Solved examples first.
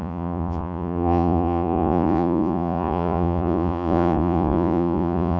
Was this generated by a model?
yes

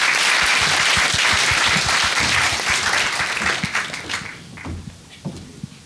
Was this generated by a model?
no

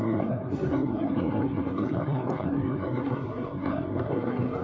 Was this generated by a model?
yes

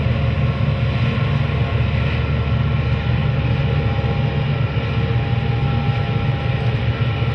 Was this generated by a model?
no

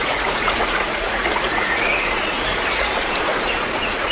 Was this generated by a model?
yes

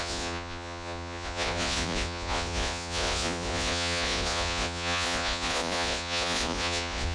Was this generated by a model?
yes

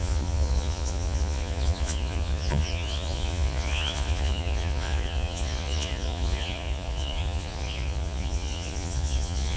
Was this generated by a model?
yes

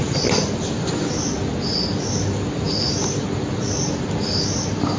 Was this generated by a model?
no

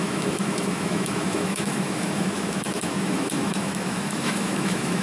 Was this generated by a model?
yes